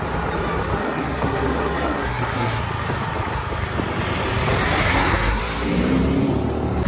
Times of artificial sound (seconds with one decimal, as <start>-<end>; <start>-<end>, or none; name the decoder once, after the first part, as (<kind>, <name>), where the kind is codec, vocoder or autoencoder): 0.8-2.6 (codec, SNAC); 4.8-5.4